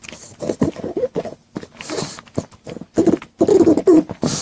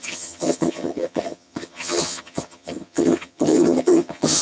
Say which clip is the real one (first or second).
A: first